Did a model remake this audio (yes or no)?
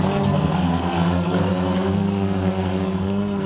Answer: yes